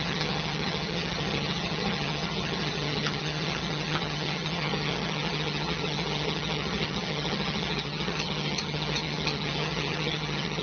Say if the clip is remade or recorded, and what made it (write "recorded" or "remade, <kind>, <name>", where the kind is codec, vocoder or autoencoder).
remade, vocoder, HiFi-GAN